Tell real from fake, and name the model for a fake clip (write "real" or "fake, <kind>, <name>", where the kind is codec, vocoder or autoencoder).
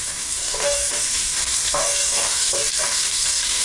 fake, codec, DAC